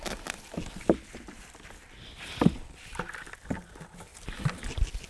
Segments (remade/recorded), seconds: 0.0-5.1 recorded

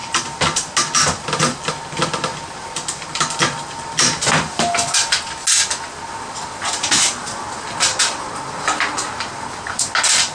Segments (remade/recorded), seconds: 0.0-10.3 recorded

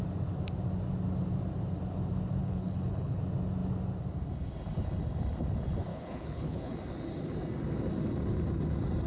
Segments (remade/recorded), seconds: 0.0-2.4 recorded; 2.4-3.2 remade; 3.2-5.9 recorded; 5.9-6.7 remade; 6.7-9.1 recorded

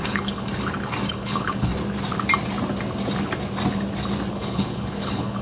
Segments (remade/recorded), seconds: 0.0-0.5 remade; 0.5-1.1 recorded; 1.1-1.7 remade; 1.7-4.3 recorded; 4.3-5.4 remade

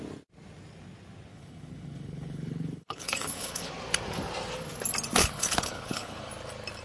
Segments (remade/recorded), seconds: 0.0-1.3 recorded; 1.3-3.7 remade; 3.7-5.2 recorded; 5.2-6.3 remade; 6.3-6.8 recorded

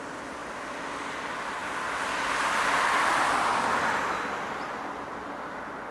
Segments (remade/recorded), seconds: 0.0-5.9 recorded